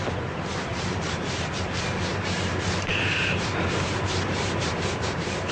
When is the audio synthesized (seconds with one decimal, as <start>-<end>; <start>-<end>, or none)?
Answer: 0.7-1.5; 2.1-5.5